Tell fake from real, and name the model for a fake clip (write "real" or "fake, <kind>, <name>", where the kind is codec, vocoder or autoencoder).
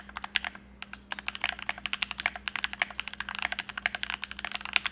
real